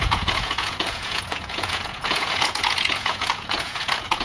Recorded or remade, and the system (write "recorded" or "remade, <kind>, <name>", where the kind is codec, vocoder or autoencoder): remade, vocoder, Vocos